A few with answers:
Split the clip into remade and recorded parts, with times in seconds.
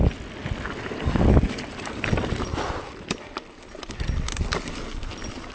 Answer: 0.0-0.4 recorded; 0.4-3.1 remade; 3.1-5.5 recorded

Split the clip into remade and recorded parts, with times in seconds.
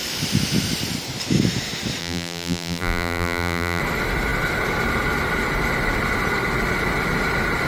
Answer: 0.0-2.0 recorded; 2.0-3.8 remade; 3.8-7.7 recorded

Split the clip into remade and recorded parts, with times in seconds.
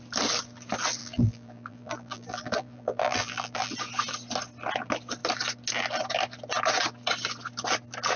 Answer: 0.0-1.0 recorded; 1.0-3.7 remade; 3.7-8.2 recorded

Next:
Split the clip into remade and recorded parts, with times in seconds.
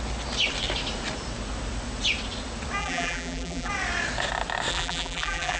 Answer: 0.0-2.8 recorded; 2.8-3.7 remade; 3.7-4.7 recorded; 4.7-5.6 remade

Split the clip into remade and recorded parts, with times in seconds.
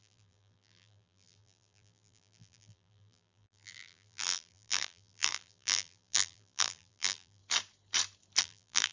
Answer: 0.0-7.4 remade; 7.4-8.4 recorded; 8.4-8.9 remade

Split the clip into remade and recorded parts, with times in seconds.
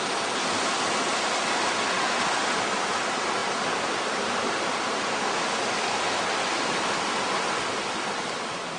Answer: 0.0-8.8 recorded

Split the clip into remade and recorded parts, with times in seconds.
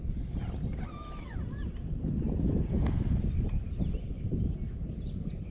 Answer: 0.0-4.3 recorded; 4.3-4.9 remade; 4.9-5.5 recorded